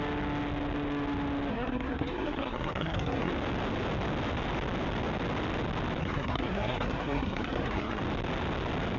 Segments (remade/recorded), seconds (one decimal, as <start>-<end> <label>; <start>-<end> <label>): 0.0-1.5 recorded; 1.5-3.3 remade; 3.3-6.0 recorded; 6.0-8.0 remade; 8.0-9.0 recorded